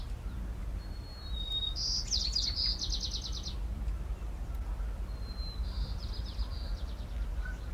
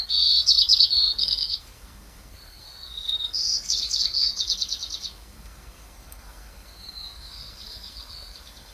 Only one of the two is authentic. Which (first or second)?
first